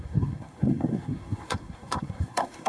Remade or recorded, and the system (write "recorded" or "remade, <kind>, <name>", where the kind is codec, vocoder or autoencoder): remade, codec, SNAC